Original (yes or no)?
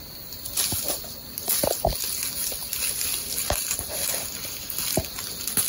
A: yes